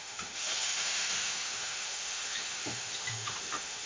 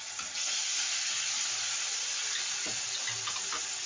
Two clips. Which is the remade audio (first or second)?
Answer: first